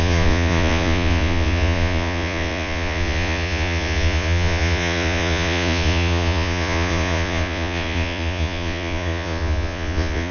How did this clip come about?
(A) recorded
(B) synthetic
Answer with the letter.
B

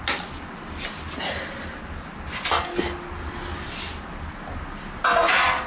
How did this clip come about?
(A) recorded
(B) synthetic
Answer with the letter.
A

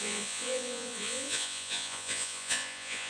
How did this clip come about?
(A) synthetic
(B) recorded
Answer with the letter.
A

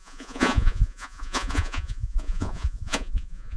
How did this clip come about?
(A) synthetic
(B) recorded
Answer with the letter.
A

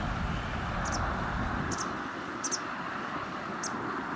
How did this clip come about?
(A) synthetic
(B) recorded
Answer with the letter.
B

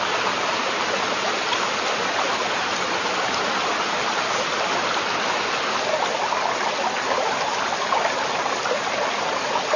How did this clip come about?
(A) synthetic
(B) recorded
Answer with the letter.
B